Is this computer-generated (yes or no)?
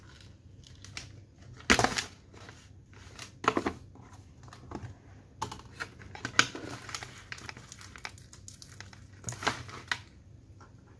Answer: no